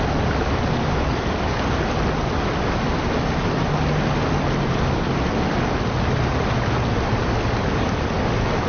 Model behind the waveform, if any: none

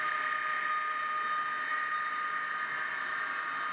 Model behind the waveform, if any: none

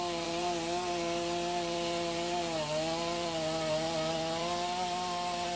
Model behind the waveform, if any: vocoder, BigVGAN v2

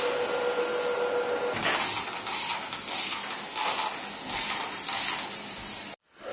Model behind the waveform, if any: none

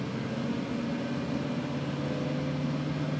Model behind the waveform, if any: none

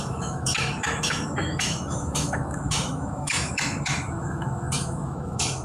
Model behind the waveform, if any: autoencoder, DAC-VAE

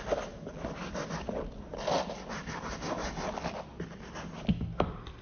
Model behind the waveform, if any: none